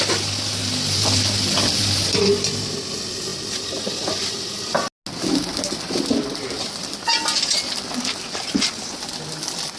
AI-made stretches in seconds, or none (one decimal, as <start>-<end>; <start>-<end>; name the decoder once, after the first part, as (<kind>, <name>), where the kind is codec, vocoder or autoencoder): none